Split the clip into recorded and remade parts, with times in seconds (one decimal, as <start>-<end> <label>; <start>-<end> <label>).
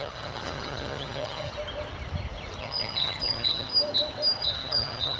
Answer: 0.0-1.5 remade; 1.5-2.6 recorded; 2.6-3.7 remade; 3.7-4.4 recorded; 4.4-5.2 remade